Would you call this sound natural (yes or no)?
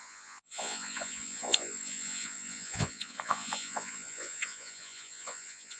no